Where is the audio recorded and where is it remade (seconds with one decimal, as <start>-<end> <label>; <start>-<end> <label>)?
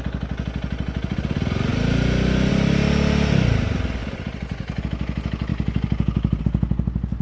0.0-7.2 recorded